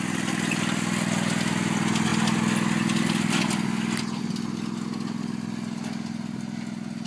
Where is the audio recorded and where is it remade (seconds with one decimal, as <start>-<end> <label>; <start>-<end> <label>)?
0.0-7.1 recorded